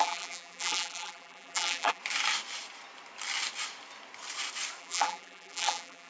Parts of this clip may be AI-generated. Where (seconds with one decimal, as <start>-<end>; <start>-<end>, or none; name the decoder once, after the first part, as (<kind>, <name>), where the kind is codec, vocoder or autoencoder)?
0.0-2.0 (vocoder, BigVGAN v2); 4.8-6.1